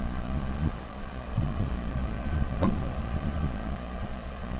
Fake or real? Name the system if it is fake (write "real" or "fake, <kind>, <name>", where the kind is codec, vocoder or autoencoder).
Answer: fake, vocoder, Vocos